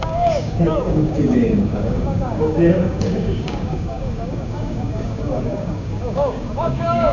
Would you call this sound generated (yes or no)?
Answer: yes